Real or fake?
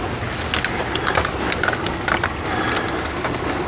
real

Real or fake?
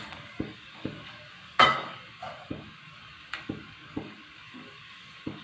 fake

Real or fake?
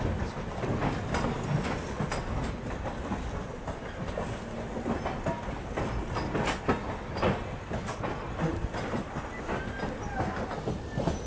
real